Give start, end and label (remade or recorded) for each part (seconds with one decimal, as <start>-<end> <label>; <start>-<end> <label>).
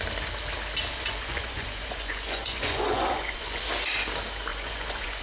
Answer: 0.0-0.9 recorded; 0.9-3.6 remade; 3.6-4.5 recorded; 4.5-5.2 remade